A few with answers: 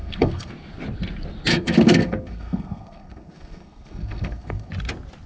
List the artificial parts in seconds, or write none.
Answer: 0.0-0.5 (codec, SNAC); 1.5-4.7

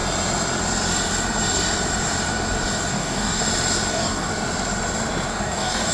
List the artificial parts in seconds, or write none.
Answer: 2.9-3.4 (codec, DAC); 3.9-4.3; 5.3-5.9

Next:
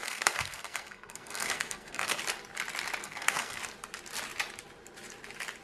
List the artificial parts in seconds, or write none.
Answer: 0.0-2.2 (codec, SNAC); 3.0-3.6